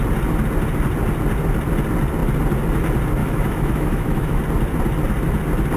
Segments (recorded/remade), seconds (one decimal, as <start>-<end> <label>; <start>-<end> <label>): 0.0-3.2 recorded; 3.2-4.4 remade; 4.4-5.8 recorded

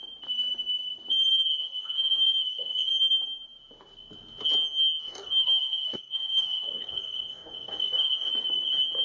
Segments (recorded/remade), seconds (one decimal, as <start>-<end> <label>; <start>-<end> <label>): 0.0-1.6 recorded; 1.6-2.9 remade; 2.9-5.0 recorded; 5.0-8.3 remade; 8.3-9.0 recorded

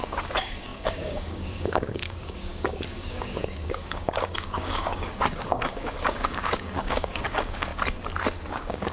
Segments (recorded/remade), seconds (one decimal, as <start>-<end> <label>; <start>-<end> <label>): 0.0-7.7 remade; 7.7-8.5 recorded; 8.5-8.9 remade

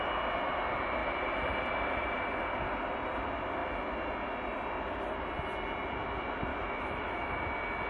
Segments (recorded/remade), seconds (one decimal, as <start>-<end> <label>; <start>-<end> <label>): 0.0-6.5 recorded; 6.5-7.4 remade; 7.4-7.9 recorded

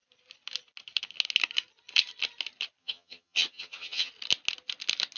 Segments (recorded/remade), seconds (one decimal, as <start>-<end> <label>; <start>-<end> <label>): 0.0-2.8 recorded; 2.8-4.1 remade; 4.1-5.2 recorded